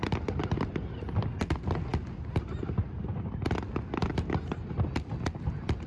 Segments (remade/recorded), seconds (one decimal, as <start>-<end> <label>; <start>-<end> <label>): 0.0-5.9 recorded